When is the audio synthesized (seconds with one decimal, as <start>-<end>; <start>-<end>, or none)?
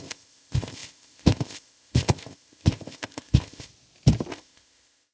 0.0-3.7; 4.3-5.1